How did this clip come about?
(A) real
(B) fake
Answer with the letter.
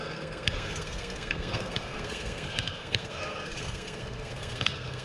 B